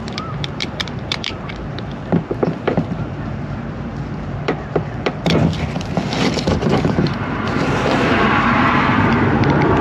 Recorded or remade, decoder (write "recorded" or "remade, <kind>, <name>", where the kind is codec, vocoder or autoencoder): remade, vocoder, BigVGAN v2